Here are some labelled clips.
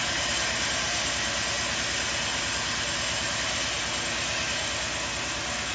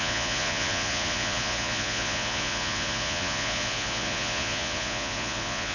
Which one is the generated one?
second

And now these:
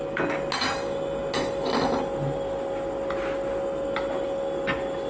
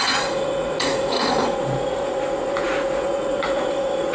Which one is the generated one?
second